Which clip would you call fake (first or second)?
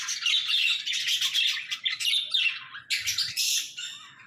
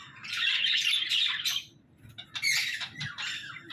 second